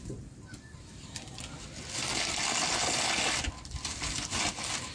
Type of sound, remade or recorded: recorded